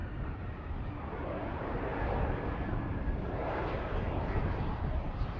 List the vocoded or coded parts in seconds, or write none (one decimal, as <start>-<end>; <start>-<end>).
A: 0.0-1.9